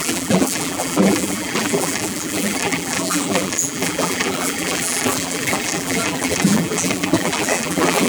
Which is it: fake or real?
fake